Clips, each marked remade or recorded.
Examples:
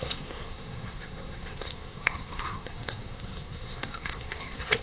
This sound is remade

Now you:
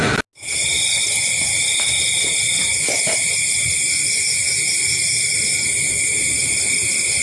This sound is recorded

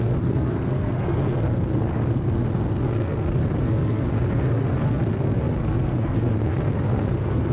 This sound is remade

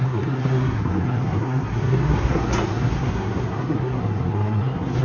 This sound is remade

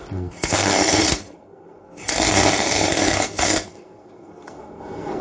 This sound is remade